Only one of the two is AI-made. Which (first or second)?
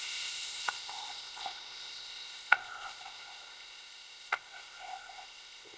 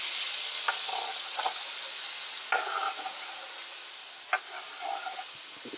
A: first